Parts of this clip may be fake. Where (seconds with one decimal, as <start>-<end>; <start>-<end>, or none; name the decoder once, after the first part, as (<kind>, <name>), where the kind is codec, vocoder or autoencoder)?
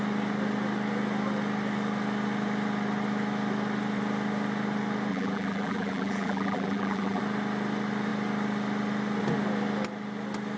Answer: 5.1-7.2 (vocoder, BigVGAN v2)